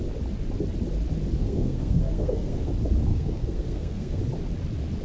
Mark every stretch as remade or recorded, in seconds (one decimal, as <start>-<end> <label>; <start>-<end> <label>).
0.0-1.4 recorded; 1.4-2.7 remade; 2.7-3.1 recorded; 3.1-4.2 remade; 4.2-5.0 recorded